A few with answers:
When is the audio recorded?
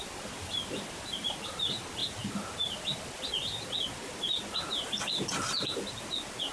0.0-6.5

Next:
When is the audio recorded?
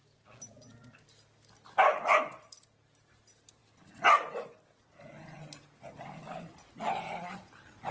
0.0-7.9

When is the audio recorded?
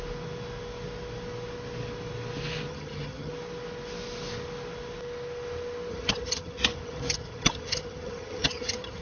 0.0-2.7; 3.3-5.9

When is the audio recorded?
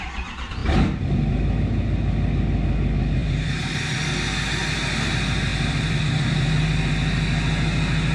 0.0-0.6; 1.1-3.2; 3.7-5.5; 6.9-8.1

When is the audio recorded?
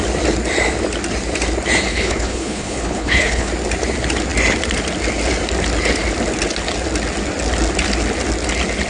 0.0-1.9; 3.5-8.9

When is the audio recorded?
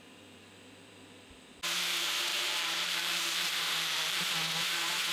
0.0-2.3; 4.2-5.1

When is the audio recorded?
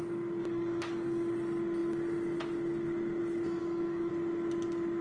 0.0-0.4; 1.3-3.6; 4.1-5.0